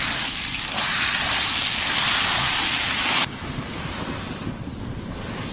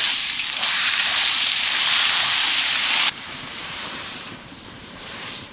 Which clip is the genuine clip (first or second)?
first